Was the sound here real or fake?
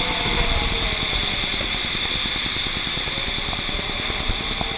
real